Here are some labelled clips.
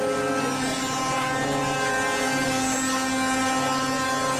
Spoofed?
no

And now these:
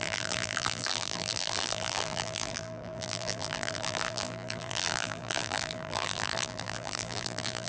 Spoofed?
yes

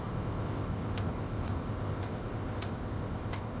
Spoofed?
yes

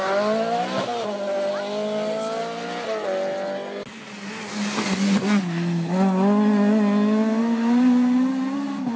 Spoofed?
no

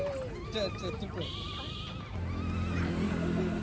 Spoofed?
no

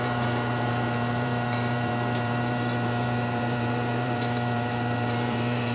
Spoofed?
yes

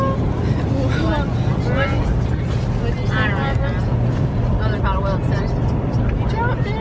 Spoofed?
no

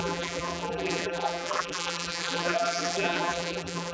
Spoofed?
yes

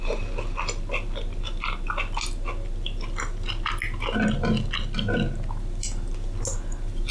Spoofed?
no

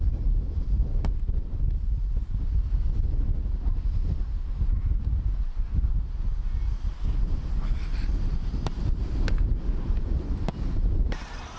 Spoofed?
no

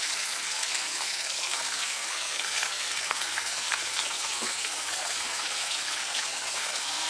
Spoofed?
yes